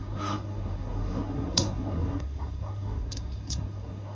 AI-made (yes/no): yes